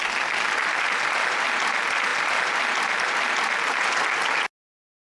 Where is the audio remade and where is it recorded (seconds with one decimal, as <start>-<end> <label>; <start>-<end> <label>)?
0.0-5.1 recorded